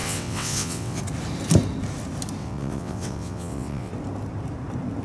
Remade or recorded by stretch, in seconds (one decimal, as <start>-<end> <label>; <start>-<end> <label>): 0.0-1.0 remade; 1.0-2.4 recorded; 2.4-3.9 remade; 3.9-5.0 recorded